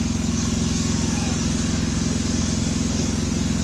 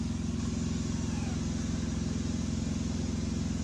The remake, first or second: first